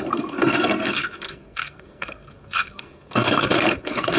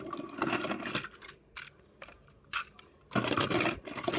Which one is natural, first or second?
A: second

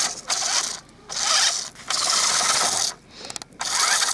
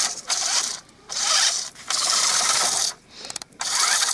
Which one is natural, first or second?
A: first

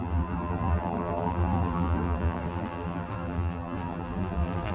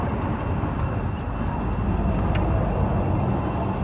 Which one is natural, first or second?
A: second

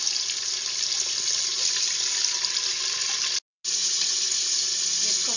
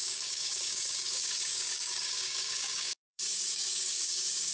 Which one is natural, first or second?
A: first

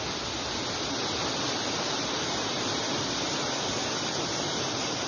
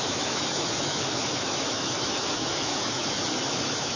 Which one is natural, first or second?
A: first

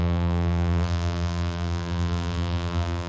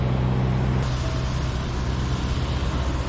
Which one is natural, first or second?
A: second